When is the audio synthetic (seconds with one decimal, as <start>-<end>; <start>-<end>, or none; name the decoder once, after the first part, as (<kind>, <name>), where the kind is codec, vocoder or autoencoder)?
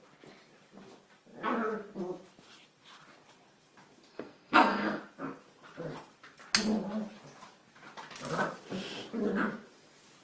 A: 4.1-5.0 (codec, SNAC)